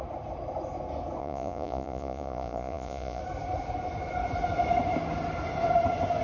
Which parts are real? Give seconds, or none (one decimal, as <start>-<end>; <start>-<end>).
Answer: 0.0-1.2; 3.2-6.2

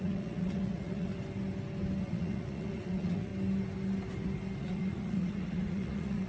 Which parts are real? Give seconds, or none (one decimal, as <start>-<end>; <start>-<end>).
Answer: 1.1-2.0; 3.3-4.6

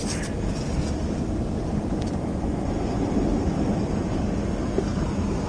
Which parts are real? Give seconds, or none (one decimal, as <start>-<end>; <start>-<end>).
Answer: 0.0-2.3; 3.1-5.5

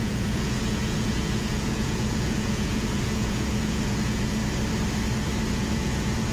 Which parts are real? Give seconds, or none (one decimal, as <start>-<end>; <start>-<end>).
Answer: 4.4-5.5

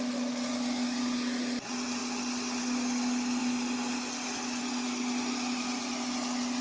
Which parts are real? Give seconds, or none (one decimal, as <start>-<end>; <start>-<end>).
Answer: 0.0-6.6

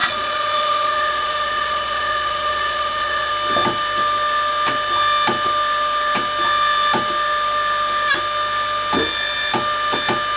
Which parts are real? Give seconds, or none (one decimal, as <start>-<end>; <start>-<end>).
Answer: 3.3-10.4

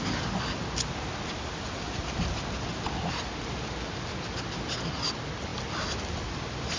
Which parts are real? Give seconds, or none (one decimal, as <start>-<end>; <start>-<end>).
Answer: 0.0-6.8

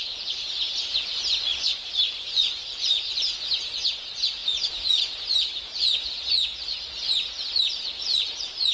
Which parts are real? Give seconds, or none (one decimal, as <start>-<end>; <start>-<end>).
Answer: 0.0-1.5; 2.9-4.4; 5.1-8.7